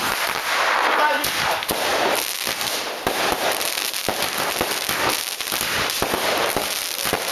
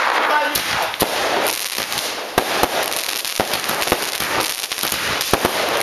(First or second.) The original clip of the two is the second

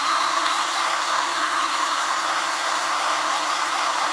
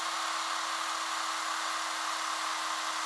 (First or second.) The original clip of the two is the second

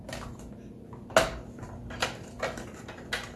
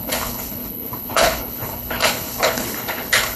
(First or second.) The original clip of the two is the first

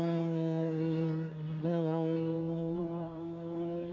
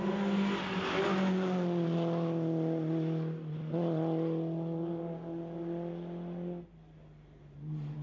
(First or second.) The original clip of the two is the second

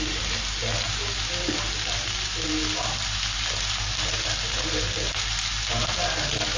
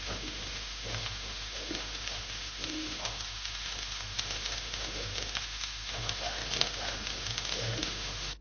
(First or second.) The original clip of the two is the first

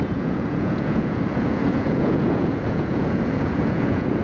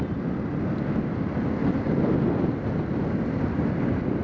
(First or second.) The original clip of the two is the second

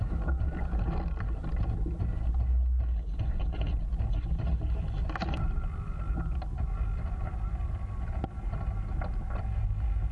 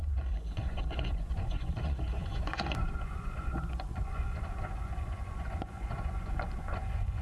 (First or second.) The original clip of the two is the first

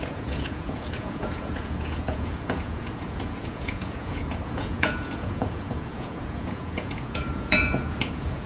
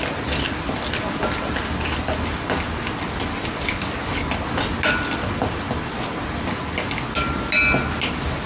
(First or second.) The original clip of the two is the second